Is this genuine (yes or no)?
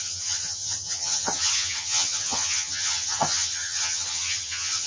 no